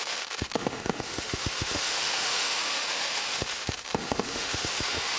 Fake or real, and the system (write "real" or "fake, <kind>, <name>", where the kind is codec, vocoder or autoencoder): fake, autoencoder, DAC-VAE